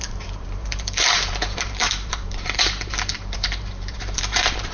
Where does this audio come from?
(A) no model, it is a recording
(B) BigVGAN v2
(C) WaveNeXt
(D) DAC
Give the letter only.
B